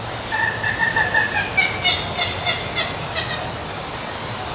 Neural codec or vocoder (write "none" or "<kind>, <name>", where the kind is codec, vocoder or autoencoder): none